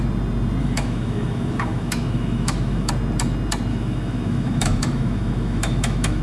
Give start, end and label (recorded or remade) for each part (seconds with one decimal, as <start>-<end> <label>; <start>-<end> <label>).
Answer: 0.0-0.6 recorded; 0.6-2.9 remade; 2.9-3.7 recorded; 3.7-6.2 remade